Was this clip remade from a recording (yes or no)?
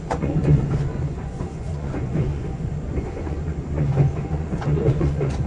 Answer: yes